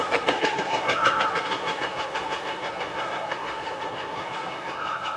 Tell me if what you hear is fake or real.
fake